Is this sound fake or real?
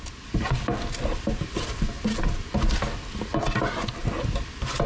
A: real